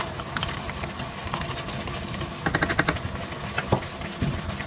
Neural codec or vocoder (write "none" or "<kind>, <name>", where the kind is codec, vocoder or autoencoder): none